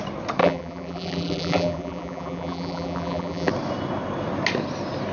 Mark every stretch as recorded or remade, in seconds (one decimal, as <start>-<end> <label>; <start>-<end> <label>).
0.0-0.4 recorded; 0.4-3.5 remade; 3.5-5.1 recorded